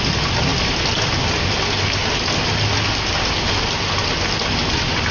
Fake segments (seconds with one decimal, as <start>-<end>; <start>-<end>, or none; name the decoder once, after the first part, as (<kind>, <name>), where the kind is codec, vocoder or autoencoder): none